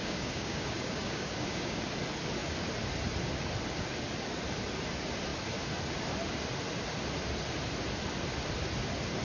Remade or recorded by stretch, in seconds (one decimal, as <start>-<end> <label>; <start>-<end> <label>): 0.0-1.8 remade; 1.8-9.2 recorded